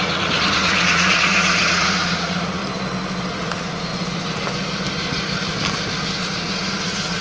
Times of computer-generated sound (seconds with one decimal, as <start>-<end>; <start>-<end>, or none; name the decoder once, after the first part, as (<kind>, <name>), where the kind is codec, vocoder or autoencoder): 0.0-2.6 (vocoder, Vocos); 3.3-3.9; 6.2-7.2